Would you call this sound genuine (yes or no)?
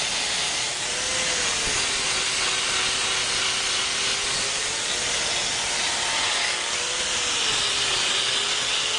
yes